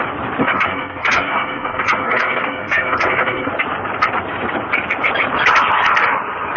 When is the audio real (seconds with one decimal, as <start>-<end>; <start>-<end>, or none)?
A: 0.0-0.4; 3.5-6.6